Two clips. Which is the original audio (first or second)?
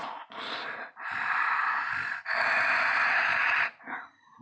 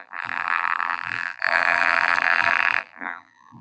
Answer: first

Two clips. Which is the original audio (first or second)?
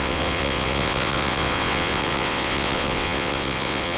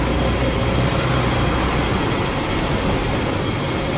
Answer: second